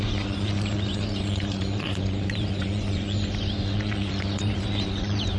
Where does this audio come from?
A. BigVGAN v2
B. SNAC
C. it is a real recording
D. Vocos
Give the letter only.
D